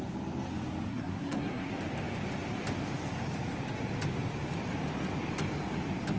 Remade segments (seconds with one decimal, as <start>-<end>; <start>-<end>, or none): 0.9-1.7

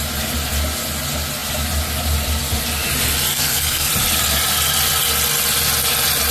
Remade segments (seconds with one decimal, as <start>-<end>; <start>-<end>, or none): 3.3-3.9

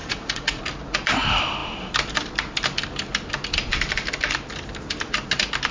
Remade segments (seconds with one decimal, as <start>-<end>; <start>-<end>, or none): 0.0-0.6